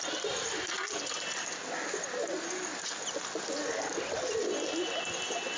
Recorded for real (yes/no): yes